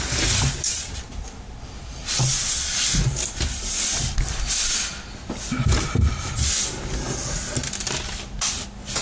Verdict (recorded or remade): remade